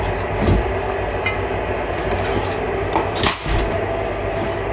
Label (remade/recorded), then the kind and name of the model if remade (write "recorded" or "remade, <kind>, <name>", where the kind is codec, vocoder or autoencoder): recorded